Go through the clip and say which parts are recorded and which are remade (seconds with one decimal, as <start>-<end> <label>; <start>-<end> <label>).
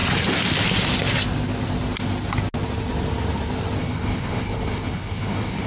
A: 0.0-3.8 recorded; 3.8-5.7 remade